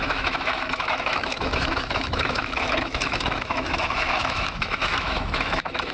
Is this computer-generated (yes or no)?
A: yes